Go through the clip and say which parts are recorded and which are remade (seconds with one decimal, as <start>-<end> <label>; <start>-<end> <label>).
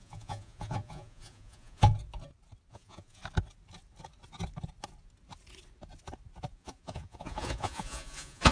0.0-1.9 remade; 1.9-2.7 recorded; 2.7-3.2 remade; 3.2-6.5 recorded; 6.5-8.5 remade